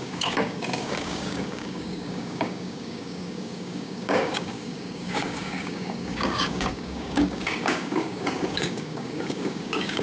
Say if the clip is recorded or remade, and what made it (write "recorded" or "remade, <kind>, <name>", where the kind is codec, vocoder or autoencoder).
remade, codec, DAC